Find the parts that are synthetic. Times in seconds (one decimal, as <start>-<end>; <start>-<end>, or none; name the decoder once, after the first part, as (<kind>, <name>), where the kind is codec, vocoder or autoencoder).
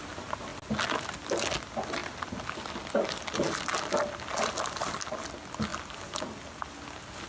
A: none